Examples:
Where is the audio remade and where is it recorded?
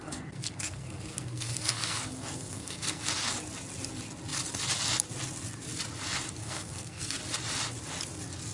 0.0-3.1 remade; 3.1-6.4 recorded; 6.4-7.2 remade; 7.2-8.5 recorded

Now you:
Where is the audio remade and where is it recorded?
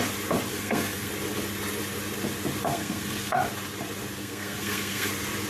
0.0-0.5 recorded; 0.5-1.1 remade; 1.1-2.7 recorded; 2.7-3.4 remade; 3.4-4.2 recorded; 4.2-5.1 remade; 5.1-5.5 recorded